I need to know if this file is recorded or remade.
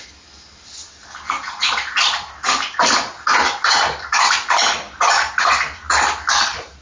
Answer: recorded